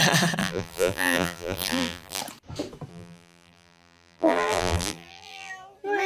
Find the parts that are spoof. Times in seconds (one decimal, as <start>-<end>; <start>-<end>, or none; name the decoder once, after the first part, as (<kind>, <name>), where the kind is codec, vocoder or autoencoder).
0.4-2.2 (vocoder, BigVGAN v2); 2.9-5.5

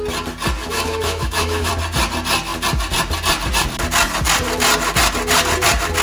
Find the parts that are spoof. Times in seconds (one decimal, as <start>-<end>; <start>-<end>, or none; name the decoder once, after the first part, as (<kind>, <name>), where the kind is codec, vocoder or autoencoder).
0.6-1.7 (autoencoder, DAC-VAE)

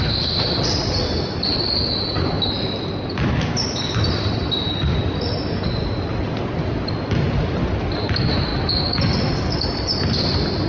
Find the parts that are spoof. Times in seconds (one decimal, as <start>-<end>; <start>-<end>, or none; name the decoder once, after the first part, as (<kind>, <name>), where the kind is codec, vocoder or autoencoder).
0.0-8.5 (vocoder, BigVGAN v2); 9.4-10.7

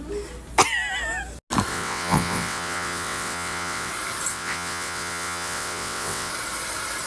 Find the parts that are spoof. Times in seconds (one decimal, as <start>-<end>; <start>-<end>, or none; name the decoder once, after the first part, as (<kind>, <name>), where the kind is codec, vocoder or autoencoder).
1.7-3.9 (vocoder, WaveNeXt); 4.3-6.3